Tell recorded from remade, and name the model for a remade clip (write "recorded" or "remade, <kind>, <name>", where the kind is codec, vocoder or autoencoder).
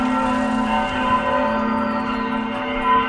recorded